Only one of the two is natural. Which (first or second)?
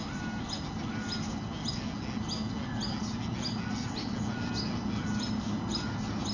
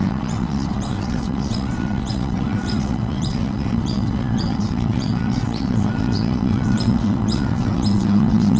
first